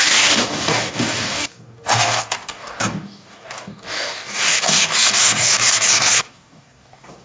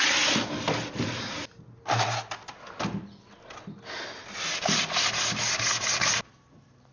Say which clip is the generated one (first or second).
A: first